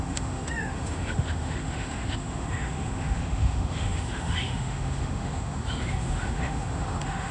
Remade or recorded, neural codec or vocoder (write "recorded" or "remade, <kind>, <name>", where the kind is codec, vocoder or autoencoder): remade, autoencoder, DAC-VAE